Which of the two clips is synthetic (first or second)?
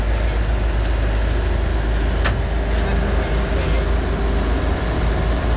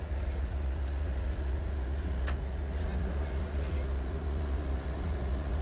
second